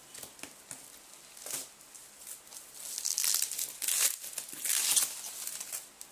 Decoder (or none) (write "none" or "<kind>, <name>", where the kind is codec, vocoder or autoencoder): none